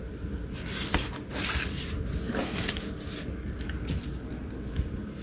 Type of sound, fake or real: real